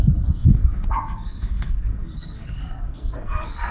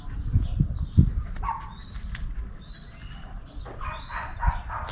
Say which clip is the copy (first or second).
first